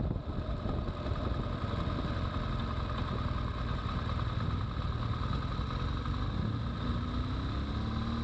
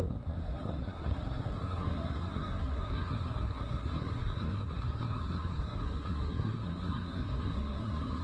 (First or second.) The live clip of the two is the first